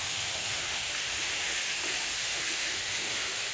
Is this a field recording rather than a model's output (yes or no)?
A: no